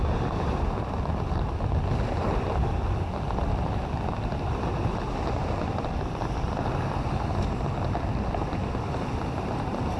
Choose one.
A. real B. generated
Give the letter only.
A